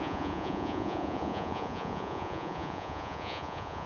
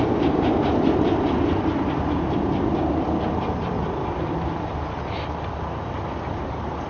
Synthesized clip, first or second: first